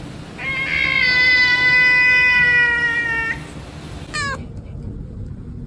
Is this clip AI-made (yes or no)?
no